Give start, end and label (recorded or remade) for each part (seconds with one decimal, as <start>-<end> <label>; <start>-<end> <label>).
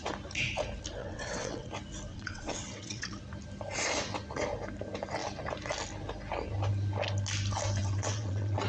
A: 0.0-1.0 recorded; 1.0-1.7 remade; 1.7-2.1 recorded; 2.1-3.2 remade; 3.2-7.8 recorded; 7.8-8.7 remade